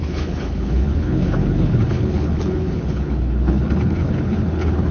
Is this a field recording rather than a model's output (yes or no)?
no